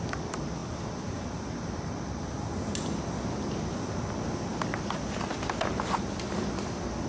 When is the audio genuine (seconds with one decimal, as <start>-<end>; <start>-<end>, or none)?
0.0-7.1